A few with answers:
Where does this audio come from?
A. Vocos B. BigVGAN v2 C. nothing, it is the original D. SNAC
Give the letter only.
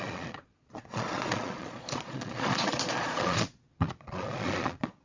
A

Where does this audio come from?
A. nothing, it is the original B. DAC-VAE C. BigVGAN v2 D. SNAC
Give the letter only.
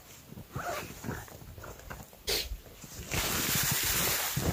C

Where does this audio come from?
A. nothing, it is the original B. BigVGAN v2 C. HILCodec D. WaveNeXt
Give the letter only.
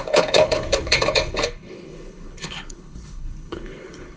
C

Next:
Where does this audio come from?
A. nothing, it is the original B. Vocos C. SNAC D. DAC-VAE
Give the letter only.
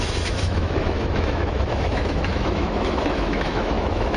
D